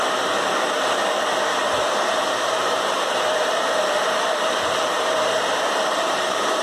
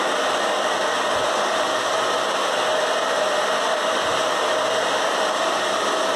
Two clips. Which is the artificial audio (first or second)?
first